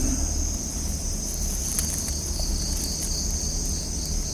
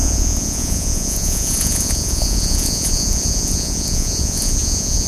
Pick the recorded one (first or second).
first